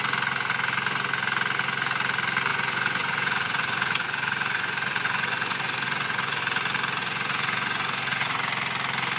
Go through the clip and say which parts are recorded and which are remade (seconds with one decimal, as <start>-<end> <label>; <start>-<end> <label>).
0.0-2.5 recorded; 2.5-6.4 remade; 6.4-7.0 recorded; 7.0-8.4 remade; 8.4-9.2 recorded